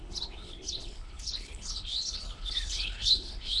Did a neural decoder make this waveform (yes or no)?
yes